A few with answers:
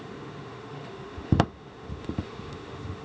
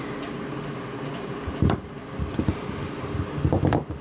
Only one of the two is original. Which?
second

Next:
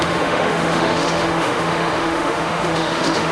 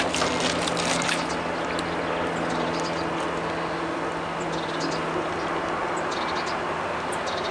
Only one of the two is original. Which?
second